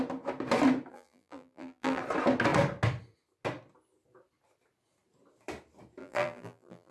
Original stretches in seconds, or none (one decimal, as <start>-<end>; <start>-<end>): 0.0-0.9; 2.0-6.0